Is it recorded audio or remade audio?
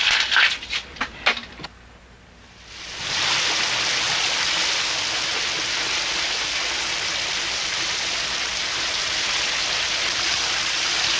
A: recorded